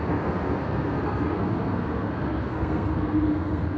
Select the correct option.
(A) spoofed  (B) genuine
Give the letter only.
A